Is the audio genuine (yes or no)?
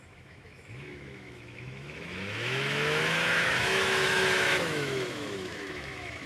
no